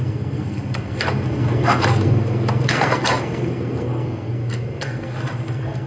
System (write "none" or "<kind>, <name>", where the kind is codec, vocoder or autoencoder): codec, SNAC